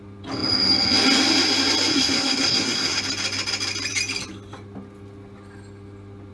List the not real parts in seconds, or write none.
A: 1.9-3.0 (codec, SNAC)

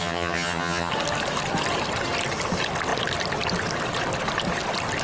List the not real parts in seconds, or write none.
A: 0.0-0.9 (vocoder, HiFi-GAN)

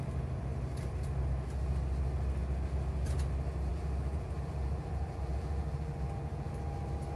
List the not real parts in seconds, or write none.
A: 3.7-6.5 (vocoder, BigVGAN v2)

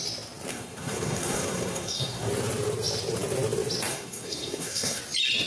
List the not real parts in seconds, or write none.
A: 0.5-2.3 (codec, SNAC); 3.9-5.0

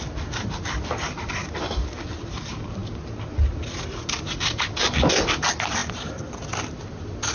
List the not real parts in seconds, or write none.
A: none

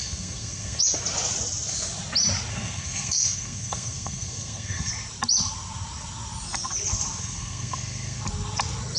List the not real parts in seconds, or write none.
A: 0.0-0.8 (codec, SNAC); 2.5-4.9; 7.2-8.2

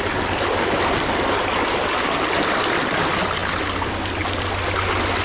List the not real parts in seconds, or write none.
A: none

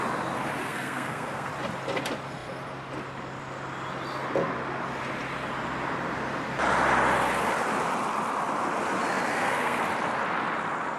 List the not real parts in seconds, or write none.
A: 0.6-1.5 (codec, SNAC); 9.3-9.8